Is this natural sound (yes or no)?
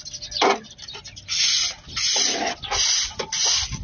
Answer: yes